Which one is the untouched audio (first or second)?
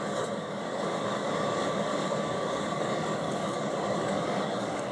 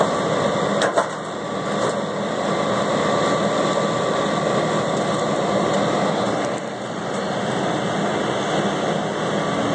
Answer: second